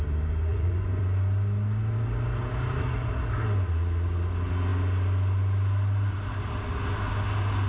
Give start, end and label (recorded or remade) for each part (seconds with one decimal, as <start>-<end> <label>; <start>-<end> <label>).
0.0-0.5 recorded; 0.5-1.0 remade; 1.0-7.7 recorded